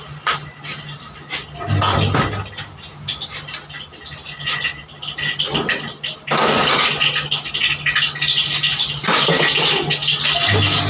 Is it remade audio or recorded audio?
recorded